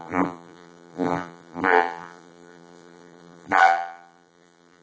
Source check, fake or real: fake